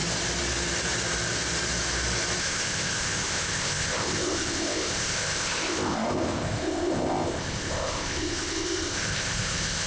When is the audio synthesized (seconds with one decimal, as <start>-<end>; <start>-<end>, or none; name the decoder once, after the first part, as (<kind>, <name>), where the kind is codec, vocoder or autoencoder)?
2.4-9.9 (codec, ZipCodec)